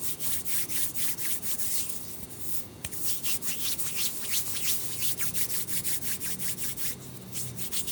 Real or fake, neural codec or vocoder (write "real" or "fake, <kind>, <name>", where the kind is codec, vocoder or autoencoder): fake, vocoder, Vocos